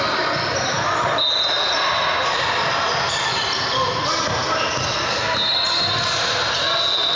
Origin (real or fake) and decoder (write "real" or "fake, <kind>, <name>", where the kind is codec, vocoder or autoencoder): real